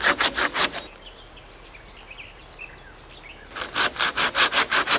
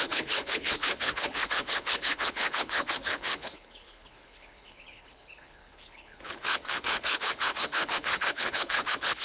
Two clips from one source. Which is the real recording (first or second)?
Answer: first